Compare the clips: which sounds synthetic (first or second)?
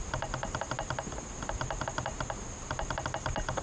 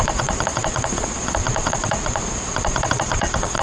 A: second